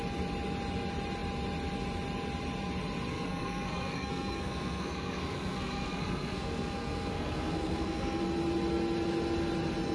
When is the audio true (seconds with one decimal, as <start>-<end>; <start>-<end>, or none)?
0.0-3.1; 8.2-9.9